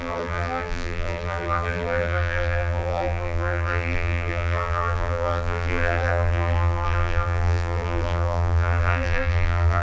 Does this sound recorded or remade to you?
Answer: remade